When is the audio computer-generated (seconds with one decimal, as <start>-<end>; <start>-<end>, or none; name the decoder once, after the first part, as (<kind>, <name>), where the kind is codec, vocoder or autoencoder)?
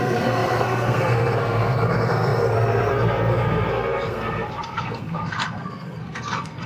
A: 0.0-6.7 (codec, SNAC)